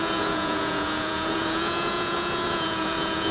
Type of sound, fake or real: fake